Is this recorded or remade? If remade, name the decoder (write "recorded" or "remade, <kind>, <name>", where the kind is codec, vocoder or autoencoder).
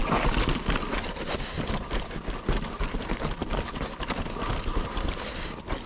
recorded